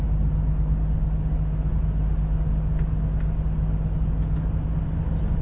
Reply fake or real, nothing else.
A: real